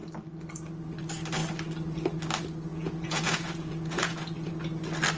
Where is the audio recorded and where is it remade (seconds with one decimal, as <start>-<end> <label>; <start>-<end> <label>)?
0.0-2.7 recorded; 2.7-4.5 remade; 4.5-5.2 recorded